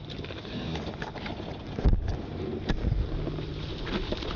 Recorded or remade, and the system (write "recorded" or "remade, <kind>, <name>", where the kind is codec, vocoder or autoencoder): recorded